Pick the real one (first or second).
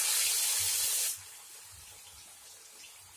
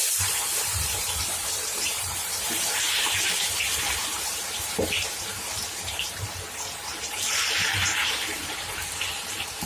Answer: first